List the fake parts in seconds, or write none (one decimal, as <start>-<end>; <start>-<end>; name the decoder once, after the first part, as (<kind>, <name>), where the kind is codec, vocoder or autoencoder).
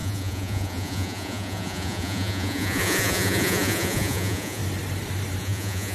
0.0-4.6 (vocoder, Vocos); 5.4-5.9